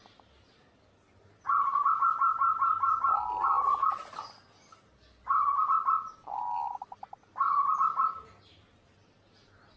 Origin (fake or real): real